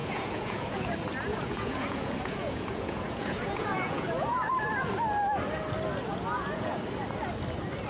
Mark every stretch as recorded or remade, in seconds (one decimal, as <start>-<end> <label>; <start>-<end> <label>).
0.0-0.9 remade; 0.9-1.3 recorded; 1.3-4.5 remade; 4.5-6.1 recorded; 6.1-6.8 remade; 6.8-7.9 recorded